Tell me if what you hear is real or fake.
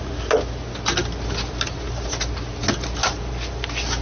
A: real